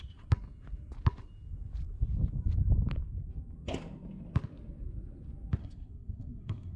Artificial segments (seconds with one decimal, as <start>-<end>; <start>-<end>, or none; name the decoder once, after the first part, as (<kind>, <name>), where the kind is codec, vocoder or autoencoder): 5.6-6.8 (codec, SNAC)